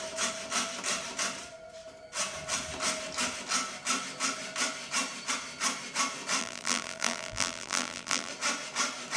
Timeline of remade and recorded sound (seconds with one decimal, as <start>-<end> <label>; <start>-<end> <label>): 0.0-6.4 recorded; 6.4-8.3 remade; 8.3-9.2 recorded